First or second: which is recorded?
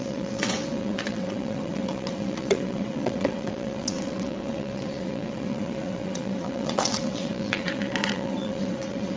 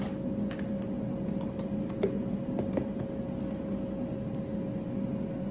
second